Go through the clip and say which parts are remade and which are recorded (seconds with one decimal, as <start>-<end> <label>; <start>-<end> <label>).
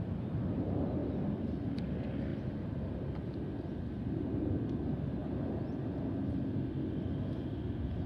0.0-1.0 remade; 1.0-1.8 recorded; 1.8-2.3 remade; 2.3-3.7 recorded; 3.7-5.2 remade; 5.2-8.1 recorded